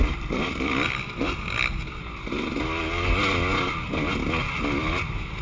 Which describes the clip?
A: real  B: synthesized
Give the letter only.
A